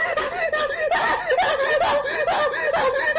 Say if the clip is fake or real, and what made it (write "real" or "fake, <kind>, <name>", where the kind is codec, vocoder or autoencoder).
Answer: real